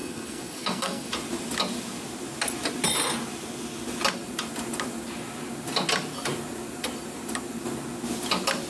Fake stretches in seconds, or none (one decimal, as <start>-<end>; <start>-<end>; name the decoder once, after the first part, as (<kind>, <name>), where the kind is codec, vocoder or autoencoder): 0.0-1.1 (codec, SNAC)